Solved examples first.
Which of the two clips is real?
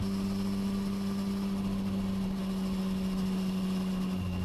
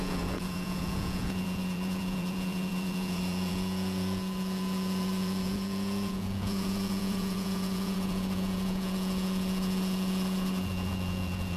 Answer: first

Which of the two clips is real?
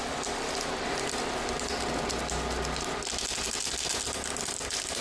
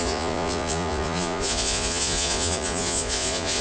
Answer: first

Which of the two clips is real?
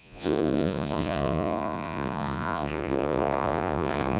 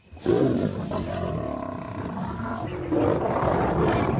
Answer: second